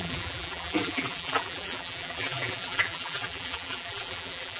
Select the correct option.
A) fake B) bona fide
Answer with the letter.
A